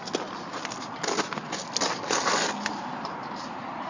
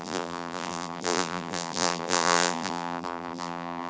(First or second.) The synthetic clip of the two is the second